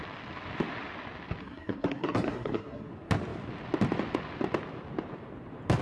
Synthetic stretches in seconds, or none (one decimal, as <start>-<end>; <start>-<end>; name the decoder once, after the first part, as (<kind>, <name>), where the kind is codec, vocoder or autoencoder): 1.4-2.9 (codec, SNAC)

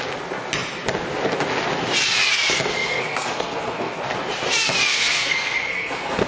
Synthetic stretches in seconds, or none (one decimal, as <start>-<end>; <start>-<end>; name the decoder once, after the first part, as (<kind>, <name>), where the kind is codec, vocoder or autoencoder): 2.7-4.0 (codec, SNAC); 4.9-6.3

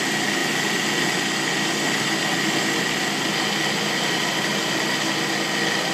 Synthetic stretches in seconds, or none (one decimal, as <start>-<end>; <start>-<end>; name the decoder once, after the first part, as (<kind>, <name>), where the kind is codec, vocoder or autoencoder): none

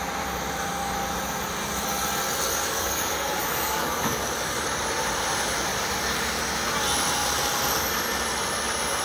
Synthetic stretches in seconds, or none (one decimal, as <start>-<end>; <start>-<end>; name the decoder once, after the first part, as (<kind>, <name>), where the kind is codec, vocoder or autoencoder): 2.5-4.6 (codec, DAC); 5.7-6.4

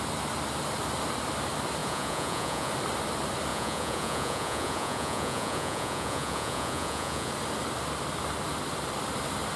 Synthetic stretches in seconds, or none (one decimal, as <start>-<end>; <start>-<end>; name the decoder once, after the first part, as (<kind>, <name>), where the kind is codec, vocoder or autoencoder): 1.8-2.7 (vocoder, Vocos); 3.5-7.3

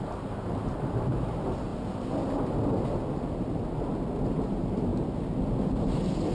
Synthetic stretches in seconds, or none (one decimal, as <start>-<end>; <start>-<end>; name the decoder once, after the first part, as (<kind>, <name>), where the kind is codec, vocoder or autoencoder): 0.0-1.7 (vocoder, BigVGAN v2); 4.1-4.9